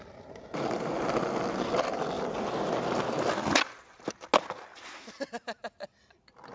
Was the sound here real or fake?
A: real